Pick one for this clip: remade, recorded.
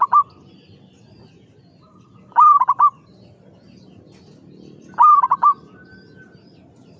recorded